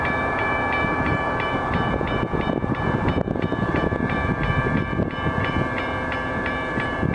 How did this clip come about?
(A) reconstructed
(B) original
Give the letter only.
A